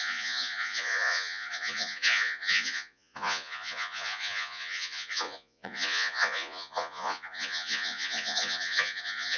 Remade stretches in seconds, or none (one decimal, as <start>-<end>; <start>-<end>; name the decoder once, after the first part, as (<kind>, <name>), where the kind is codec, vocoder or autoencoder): 0.0-9.4 (vocoder, Vocos)